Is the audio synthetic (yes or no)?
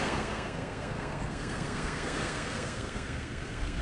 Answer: yes